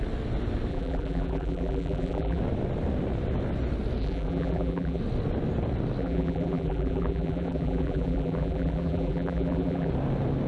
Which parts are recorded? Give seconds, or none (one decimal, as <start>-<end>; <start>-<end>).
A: 0.0-0.7; 2.4-4.0; 5.0-6.0; 9.9-10.5